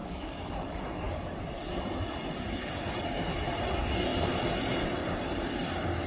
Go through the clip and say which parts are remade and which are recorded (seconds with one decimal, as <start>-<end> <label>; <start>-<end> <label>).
0.0-1.4 remade; 1.4-6.1 recorded